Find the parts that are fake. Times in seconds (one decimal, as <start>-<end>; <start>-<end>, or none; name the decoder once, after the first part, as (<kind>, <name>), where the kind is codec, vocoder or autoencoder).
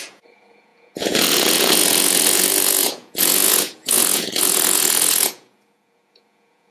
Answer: 0.0-6.7 (vocoder, Vocos)